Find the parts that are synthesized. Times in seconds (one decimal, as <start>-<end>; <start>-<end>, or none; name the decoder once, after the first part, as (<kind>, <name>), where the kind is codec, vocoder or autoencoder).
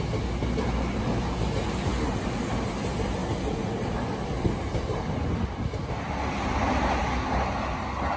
none